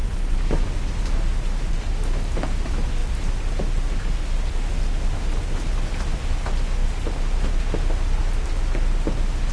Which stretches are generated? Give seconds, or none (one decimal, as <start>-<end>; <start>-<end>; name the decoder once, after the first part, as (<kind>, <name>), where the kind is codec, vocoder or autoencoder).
0.0-1.9 (vocoder, BigVGAN v2)